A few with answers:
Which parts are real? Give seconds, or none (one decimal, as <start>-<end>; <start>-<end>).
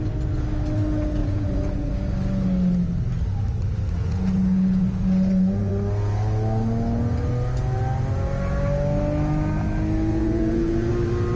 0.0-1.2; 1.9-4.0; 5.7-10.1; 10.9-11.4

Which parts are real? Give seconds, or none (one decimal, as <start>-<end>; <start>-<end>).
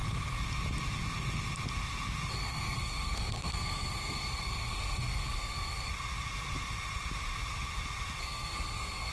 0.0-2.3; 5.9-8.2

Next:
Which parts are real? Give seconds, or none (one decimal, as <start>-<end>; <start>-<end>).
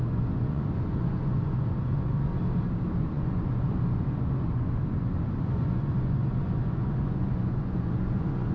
2.3-3.0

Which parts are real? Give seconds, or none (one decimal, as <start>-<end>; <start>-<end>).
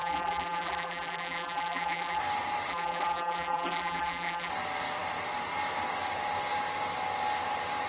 2.2-2.7; 4.5-7.9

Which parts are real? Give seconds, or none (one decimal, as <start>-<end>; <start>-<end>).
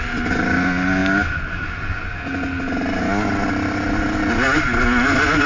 0.0-5.5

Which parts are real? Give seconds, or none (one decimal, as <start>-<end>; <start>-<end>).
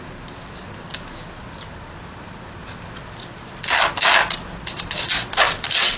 0.0-6.0